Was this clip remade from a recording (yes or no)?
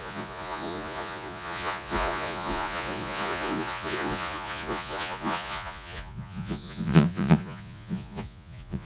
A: yes